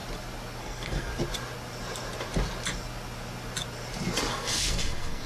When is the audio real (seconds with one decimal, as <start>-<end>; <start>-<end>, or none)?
0.0-0.6; 1.1-4.3